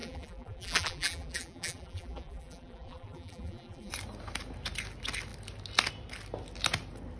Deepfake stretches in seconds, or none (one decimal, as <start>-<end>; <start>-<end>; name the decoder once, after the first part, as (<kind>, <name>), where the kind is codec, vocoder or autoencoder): 0.0-3.9 (vocoder, BigVGAN v2)